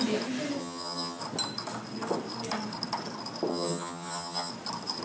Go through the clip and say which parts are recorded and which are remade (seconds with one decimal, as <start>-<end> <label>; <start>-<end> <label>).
0.0-0.6 recorded; 0.6-1.2 remade; 1.2-3.5 recorded; 3.5-4.5 remade; 4.5-5.0 recorded